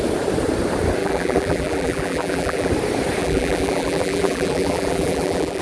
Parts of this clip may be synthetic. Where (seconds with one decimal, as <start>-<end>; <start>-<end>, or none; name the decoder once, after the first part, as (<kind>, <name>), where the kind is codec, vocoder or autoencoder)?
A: 1.0-2.7 (vocoder, BigVGAN v2); 3.2-5.6